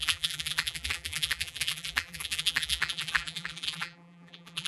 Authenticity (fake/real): fake